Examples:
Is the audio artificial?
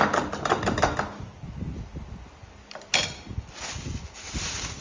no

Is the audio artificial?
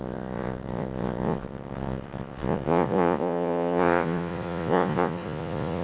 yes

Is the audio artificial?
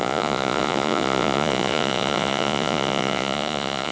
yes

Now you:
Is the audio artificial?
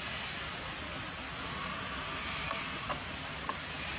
no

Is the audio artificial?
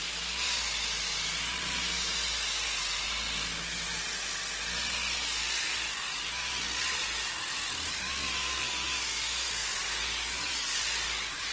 no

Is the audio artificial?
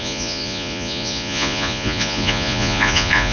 yes